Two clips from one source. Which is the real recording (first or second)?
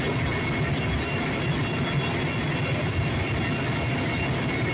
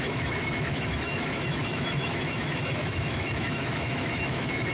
first